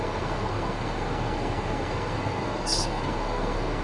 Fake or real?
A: fake